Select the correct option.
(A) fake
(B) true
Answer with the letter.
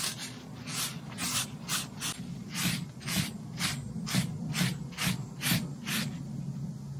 B